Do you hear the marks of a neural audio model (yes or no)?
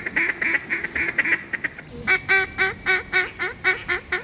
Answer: no